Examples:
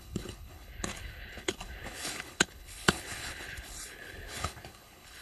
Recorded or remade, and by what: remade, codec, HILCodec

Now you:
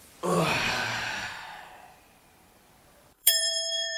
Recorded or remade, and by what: remade, vocoder, BigVGAN v2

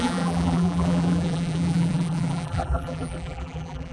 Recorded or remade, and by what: remade, vocoder, BigVGAN v2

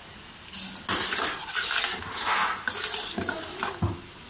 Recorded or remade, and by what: recorded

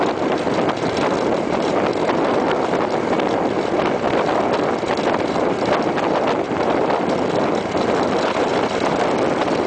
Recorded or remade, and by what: recorded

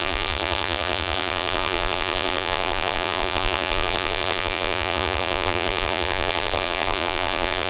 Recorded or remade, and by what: remade, vocoder, BigVGAN v2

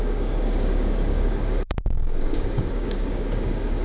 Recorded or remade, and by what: remade, codec, DAC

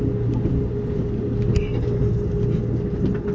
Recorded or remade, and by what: recorded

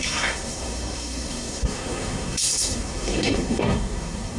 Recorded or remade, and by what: remade, codec, SNAC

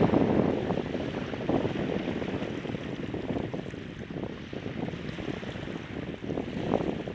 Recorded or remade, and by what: recorded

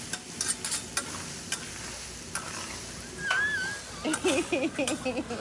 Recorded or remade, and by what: recorded